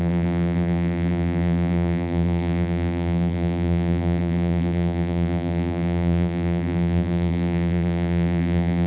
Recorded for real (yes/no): no